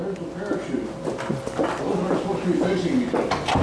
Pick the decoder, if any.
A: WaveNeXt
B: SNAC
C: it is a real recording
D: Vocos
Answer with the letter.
C